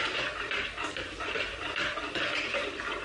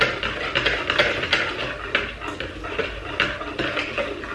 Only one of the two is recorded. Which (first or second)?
second